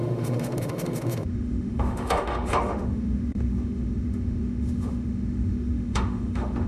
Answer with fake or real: fake